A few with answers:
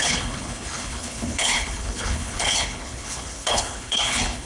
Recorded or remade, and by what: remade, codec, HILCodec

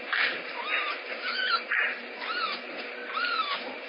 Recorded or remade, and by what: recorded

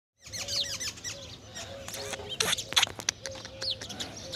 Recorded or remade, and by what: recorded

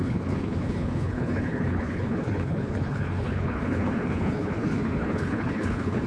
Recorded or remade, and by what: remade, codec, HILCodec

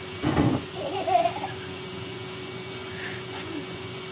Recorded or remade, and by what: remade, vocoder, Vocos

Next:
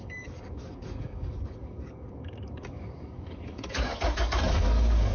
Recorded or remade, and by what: remade, codec, DAC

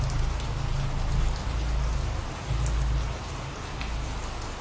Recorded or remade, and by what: recorded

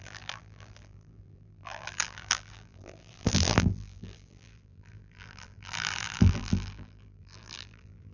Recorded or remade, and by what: remade, vocoder, BigVGAN v2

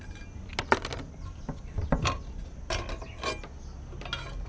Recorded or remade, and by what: recorded